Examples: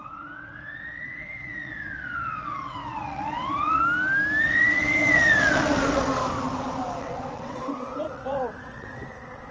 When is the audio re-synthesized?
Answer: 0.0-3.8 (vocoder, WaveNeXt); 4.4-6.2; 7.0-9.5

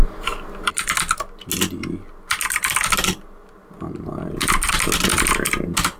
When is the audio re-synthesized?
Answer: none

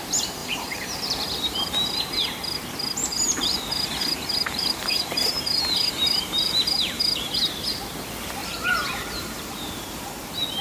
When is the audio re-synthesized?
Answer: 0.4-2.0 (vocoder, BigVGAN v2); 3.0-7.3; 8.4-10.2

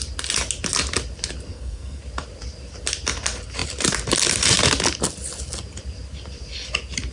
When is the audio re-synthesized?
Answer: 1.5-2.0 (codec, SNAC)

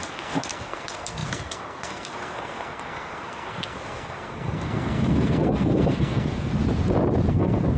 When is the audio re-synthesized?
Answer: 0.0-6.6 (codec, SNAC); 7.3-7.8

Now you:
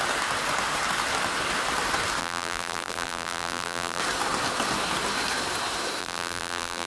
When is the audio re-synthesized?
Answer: 2.2-4.0 (vocoder, BigVGAN v2); 6.0-6.9

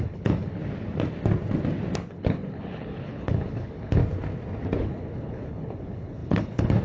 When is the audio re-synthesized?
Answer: 0.0-0.6 (codec, HILCodec); 2.1-4.0; 4.8-6.8

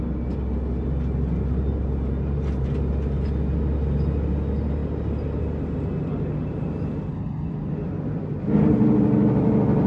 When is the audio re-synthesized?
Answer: none